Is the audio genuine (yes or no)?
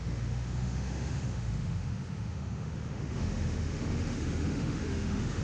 no